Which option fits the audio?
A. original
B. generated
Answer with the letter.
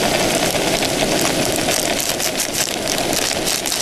A